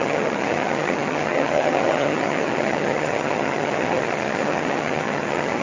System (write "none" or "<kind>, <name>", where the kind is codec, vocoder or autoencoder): vocoder, HiFi-GAN